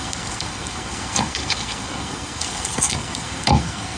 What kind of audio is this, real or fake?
fake